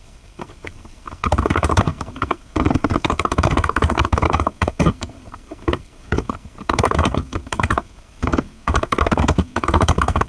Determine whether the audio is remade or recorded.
remade